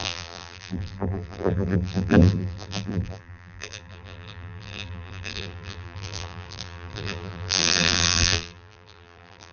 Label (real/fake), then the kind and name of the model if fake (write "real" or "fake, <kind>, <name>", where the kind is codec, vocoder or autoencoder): fake, vocoder, BigVGAN v2